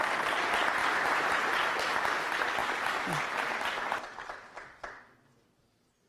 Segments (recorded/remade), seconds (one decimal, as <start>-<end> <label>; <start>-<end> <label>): 0.0-0.8 recorded; 0.8-1.4 remade; 1.4-6.1 recorded